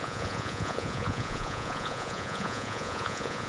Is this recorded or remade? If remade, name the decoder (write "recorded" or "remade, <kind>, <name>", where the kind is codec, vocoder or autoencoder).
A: remade, vocoder, Vocos